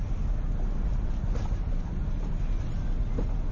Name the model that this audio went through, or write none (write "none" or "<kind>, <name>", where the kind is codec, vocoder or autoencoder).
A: none